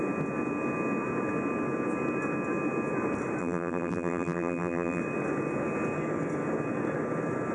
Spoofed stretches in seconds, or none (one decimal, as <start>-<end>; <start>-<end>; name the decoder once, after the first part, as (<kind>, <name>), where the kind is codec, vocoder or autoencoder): 3.4-5.0 (vocoder, BigVGAN v2)